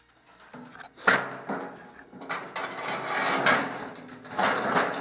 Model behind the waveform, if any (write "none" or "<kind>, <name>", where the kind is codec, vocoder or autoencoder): none